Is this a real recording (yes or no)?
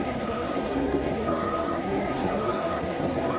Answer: no